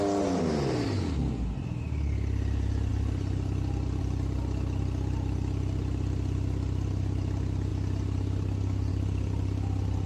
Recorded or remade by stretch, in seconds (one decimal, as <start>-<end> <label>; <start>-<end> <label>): 0.0-10.1 recorded